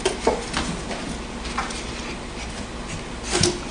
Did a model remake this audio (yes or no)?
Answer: no